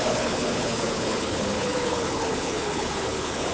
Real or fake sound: fake